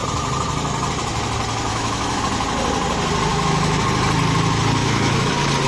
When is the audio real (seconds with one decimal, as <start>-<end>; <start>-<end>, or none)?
0.0-1.7; 2.2-3.3; 3.8-4.8; 5.3-5.7